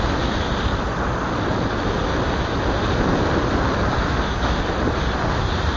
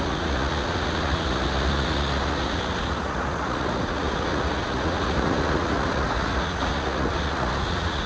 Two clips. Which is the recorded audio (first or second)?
first